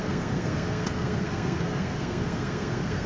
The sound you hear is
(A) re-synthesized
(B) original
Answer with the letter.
A